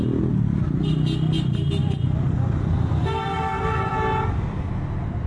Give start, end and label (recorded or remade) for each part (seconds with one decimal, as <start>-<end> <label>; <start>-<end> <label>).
0.0-5.3 recorded